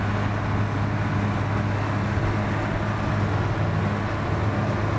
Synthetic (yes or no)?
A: no